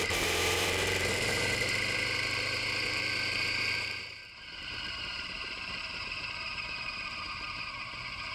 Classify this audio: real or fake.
fake